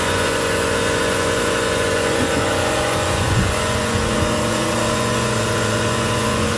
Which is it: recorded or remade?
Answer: remade